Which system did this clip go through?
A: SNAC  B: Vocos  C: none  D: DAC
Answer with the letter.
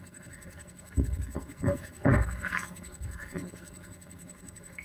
A